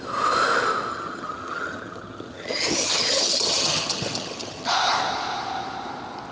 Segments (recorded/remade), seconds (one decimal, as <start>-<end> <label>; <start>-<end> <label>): 0.0-0.9 recorded; 0.9-4.7 remade; 4.7-6.3 recorded